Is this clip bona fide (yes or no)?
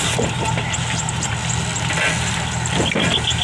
yes